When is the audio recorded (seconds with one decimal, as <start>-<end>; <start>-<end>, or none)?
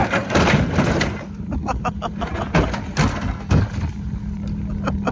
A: 0.0-3.1; 3.6-5.1